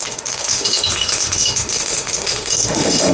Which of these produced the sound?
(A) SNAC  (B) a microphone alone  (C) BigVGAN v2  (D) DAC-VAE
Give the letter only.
D